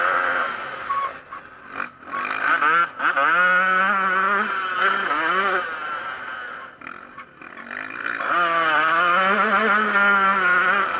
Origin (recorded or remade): recorded